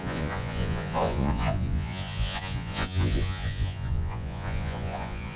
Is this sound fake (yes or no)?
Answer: yes